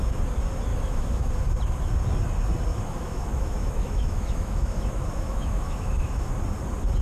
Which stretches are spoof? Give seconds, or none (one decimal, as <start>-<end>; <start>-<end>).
0.7-1.3; 2.7-6.3